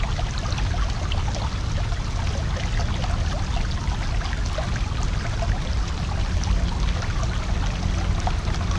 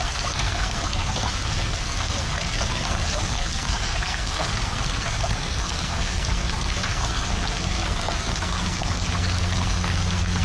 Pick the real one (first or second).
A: first